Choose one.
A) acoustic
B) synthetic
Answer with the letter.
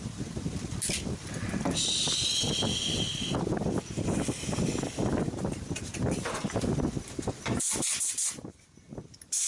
B